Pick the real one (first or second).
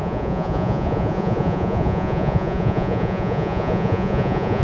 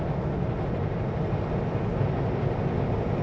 second